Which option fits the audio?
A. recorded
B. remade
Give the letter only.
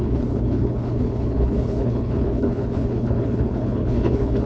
B